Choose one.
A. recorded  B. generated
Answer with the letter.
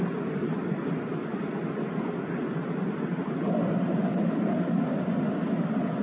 A